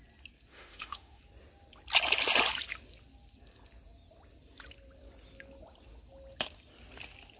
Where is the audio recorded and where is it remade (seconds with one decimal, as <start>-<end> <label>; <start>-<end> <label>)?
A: 0.0-0.5 recorded; 0.5-1.2 remade; 1.2-7.4 recorded